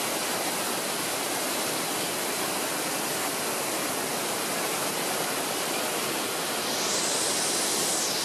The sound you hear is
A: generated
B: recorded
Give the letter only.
B